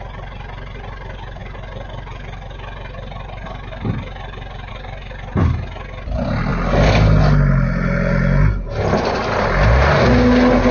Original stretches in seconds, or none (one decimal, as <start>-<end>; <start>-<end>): 0.0-10.7